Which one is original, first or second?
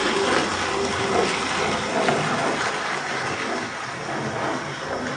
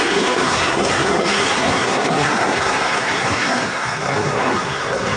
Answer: first